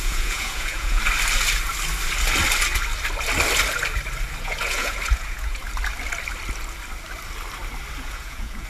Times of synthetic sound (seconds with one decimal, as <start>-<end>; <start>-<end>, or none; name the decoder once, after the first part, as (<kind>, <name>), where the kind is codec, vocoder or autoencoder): 0.0-1.0 (vocoder, Vocos); 4.4-5.6; 8.0-8.7